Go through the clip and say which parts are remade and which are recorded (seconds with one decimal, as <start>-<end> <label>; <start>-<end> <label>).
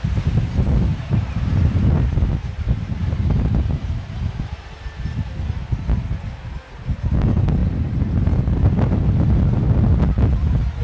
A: 0.0-0.9 recorded; 0.9-5.0 remade; 5.0-10.8 recorded